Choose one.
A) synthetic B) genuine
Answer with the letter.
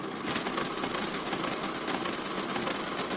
B